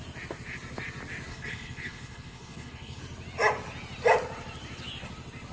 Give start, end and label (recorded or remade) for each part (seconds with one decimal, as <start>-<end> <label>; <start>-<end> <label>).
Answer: 0.0-1.3 recorded; 1.3-3.0 remade; 3.0-5.5 recorded